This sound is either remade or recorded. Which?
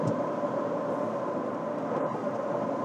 recorded